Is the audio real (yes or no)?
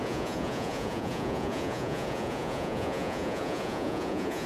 no